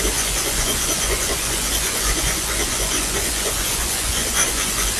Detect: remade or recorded remade